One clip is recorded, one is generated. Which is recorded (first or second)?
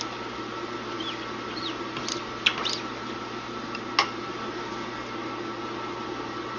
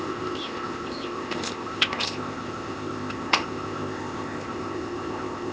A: first